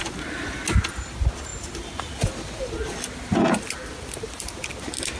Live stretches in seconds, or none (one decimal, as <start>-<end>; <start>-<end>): 0.0-5.2